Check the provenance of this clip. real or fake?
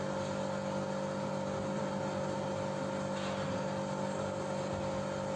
real